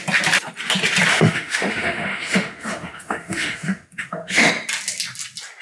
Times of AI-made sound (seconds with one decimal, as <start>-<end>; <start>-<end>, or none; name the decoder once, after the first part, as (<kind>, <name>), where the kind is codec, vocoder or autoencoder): 1.1-4.5 (autoencoder, DAC-VAE)